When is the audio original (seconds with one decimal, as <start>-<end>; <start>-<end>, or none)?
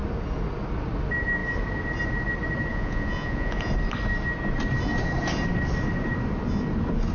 0.0-2.7; 3.7-7.1